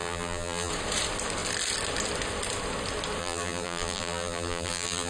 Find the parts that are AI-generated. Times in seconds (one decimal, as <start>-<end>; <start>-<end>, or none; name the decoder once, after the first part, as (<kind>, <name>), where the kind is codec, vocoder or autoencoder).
0.0-0.7 (vocoder, BigVGAN v2); 3.2-5.1